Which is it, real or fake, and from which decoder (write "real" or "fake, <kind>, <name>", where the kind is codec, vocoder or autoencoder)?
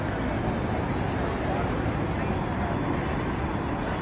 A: real